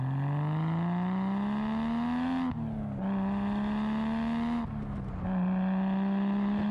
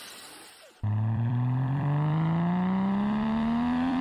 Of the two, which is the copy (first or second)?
second